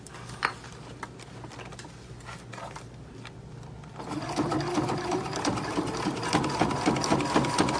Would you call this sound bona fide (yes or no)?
yes